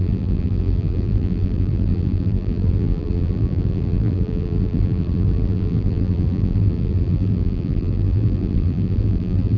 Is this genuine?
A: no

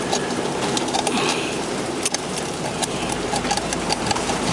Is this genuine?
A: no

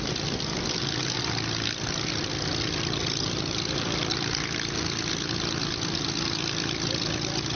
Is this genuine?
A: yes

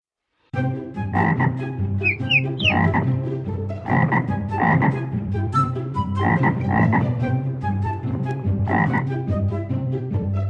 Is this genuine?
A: no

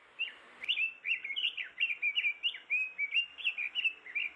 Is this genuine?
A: yes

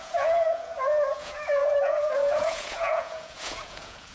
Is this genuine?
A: no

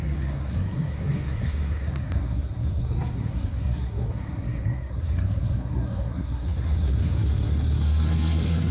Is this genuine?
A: no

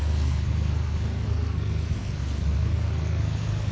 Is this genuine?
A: no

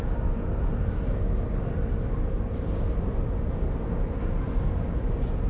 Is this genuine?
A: yes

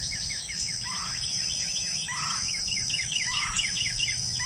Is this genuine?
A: no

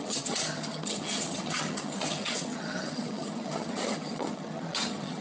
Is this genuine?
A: no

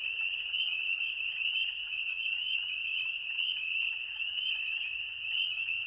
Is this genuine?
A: no